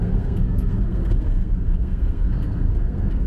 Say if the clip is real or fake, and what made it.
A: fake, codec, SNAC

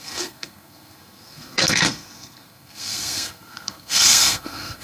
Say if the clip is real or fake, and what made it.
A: fake, codec, SNAC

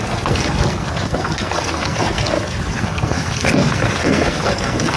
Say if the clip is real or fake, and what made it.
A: fake, codec, SNAC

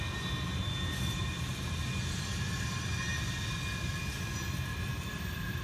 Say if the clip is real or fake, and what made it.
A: real